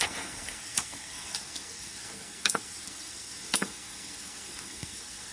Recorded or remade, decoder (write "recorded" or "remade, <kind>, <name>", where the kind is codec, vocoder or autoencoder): remade, codec, SNAC